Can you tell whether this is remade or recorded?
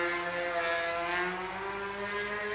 recorded